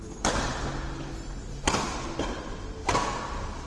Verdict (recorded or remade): recorded